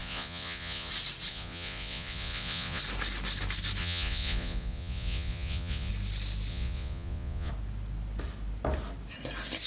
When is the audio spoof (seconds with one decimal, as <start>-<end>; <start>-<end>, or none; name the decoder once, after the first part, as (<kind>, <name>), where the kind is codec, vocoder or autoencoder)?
0.0-0.9 (vocoder, Vocos); 1.3-2.8; 3.8-5.9; 6.5-7.5